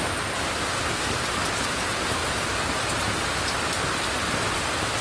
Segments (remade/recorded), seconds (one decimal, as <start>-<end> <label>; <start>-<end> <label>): 0.0-5.0 recorded